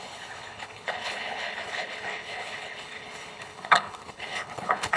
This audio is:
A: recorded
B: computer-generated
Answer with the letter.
B